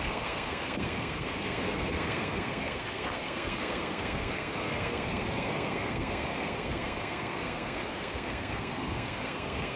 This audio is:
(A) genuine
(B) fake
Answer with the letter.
B